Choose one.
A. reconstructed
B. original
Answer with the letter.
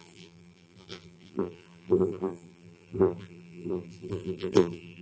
A